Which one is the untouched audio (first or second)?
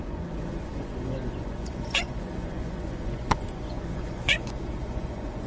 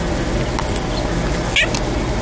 second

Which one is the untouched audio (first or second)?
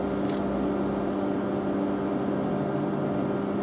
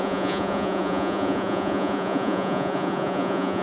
first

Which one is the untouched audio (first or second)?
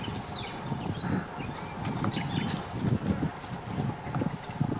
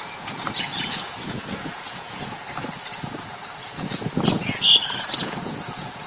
first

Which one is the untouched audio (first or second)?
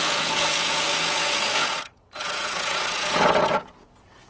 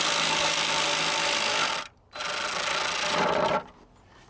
second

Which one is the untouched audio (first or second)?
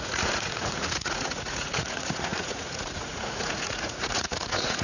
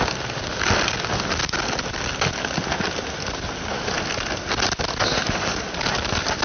second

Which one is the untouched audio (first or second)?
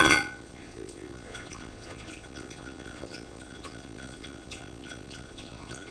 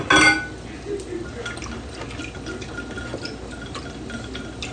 second